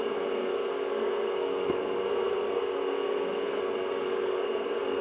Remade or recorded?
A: remade